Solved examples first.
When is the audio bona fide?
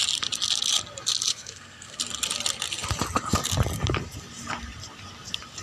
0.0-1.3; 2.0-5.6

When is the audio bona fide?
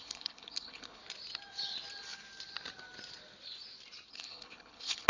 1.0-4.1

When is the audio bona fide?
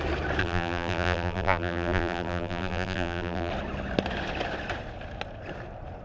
0.0-0.4; 3.5-6.0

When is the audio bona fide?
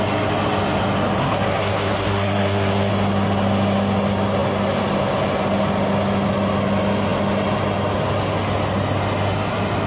0.0-1.2; 2.9-9.9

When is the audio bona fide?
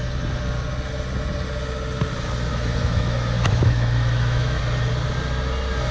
0.0-2.5; 4.6-5.9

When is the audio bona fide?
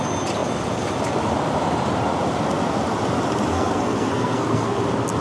0.0-3.5; 4.8-5.2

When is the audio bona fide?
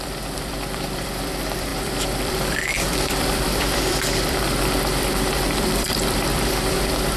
none